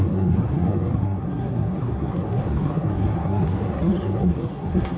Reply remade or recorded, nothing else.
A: remade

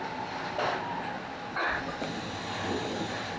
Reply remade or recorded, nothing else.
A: recorded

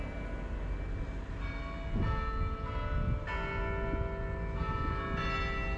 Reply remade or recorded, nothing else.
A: recorded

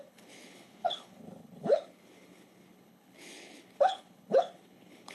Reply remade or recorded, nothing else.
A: remade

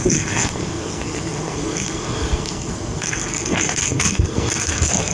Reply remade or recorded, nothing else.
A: remade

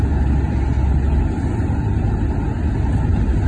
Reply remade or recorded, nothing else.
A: recorded